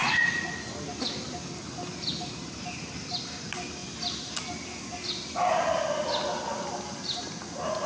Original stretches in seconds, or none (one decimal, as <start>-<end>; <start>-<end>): 0.5-7.9